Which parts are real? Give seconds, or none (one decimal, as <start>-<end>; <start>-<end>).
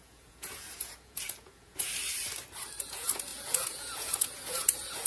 1.9-2.8